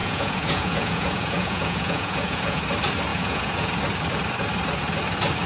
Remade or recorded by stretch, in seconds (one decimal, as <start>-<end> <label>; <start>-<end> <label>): 0.0-2.6 remade; 2.6-3.1 recorded; 3.1-3.8 remade; 3.8-5.5 recorded